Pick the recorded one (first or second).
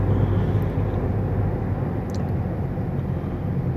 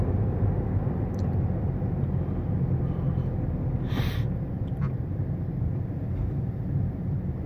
first